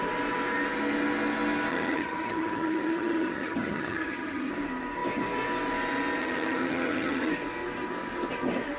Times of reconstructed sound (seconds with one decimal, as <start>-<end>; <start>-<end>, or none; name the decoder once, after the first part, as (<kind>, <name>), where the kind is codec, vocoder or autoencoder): 1.7-4.5 (vocoder, HiFi-GAN); 6.2-7.3

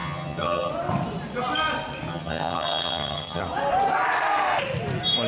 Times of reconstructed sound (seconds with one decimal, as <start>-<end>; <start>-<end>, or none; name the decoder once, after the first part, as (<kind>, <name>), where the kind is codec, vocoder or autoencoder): 0.0-0.7 (vocoder, HiFi-GAN); 2.1-3.4

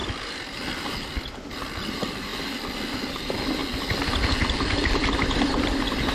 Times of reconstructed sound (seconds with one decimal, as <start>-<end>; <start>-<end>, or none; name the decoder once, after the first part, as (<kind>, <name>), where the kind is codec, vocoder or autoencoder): 0.0-2.3 (vocoder, BigVGAN v2); 3.1-3.6; 4.8-6.1

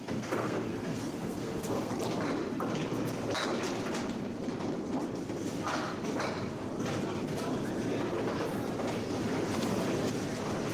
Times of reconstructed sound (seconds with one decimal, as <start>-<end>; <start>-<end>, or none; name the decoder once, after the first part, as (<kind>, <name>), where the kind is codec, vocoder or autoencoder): 0.0-1.9 (codec, SNAC)